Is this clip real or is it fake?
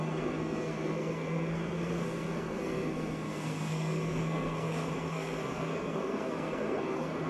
fake